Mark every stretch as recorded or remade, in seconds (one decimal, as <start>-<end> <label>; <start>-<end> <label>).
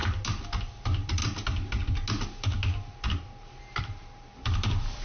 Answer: 0.0-0.6 recorded; 0.6-1.2 remade; 1.2-3.8 recorded; 3.8-5.0 remade